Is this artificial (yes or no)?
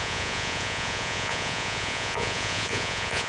yes